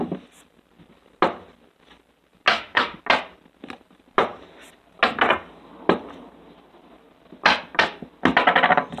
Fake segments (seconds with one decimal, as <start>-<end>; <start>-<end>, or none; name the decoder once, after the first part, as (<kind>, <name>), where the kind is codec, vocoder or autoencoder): 2.5-3.0 (autoencoder, DAC-VAE)